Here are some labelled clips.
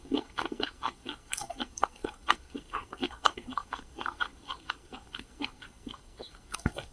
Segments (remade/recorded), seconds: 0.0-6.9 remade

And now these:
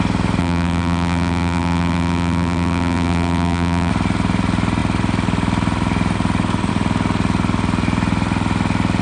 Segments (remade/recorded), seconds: 0.0-0.4 recorded; 0.4-3.9 remade; 3.9-9.0 recorded

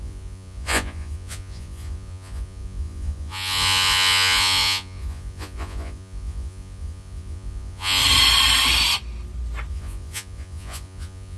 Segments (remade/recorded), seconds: 0.0-8.0 remade; 8.0-9.7 recorded; 9.7-11.4 remade

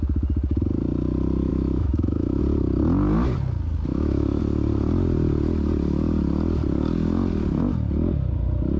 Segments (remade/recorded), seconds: 0.0-1.5 recorded; 1.5-2.4 remade; 2.4-3.9 recorded; 3.9-4.4 remade; 4.4-8.8 recorded